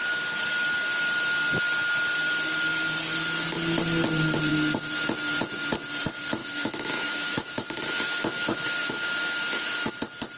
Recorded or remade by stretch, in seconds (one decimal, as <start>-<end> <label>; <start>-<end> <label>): 0.0-6.4 recorded; 6.4-9.9 remade; 9.9-10.4 recorded